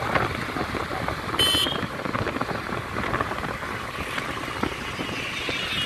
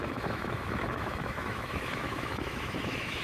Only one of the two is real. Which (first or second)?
first